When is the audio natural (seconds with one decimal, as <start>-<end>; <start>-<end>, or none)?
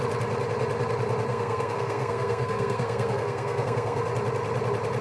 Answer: 0.0-1.3; 4.0-5.0